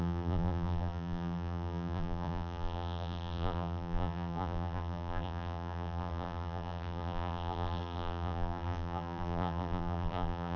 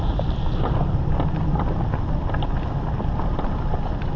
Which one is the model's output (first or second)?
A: first